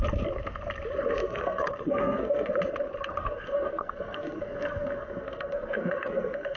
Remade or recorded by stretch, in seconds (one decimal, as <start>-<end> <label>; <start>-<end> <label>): 0.0-1.2 recorded; 1.2-2.5 remade; 2.5-3.2 recorded; 3.2-6.6 remade

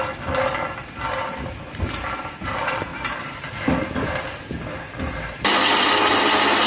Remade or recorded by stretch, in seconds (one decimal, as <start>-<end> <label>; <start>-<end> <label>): 0.0-6.7 recorded

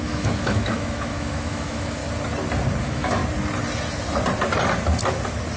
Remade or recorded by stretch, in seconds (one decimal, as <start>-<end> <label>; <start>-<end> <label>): 0.0-2.0 remade; 2.0-2.8 recorded; 2.8-3.2 remade; 3.2-5.6 recorded

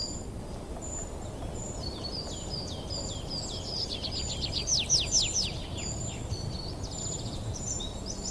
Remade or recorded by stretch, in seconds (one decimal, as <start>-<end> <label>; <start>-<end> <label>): 0.0-4.7 remade; 4.7-6.1 recorded; 6.1-8.3 remade